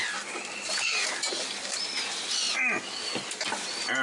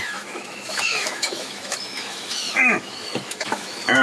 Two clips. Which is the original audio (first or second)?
first